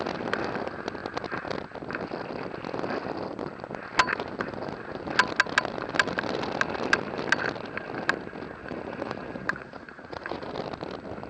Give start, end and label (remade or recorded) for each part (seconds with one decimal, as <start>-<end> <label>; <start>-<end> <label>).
0.0-8.6 recorded; 8.6-10.5 remade; 10.5-11.3 recorded